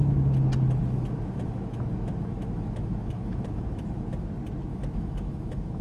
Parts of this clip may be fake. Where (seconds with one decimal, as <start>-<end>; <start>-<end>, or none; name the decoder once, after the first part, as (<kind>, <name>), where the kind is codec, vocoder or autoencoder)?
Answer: 0.8-4.3 (autoencoder, DAC-VAE); 4.7-5.8